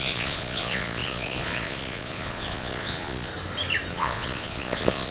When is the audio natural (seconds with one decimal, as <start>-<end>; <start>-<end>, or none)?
3.3-3.9